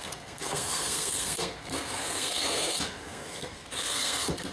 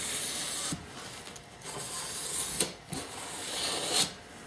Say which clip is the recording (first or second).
second